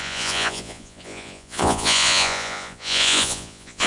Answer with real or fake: fake